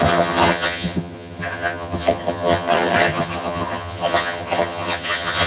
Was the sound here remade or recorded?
remade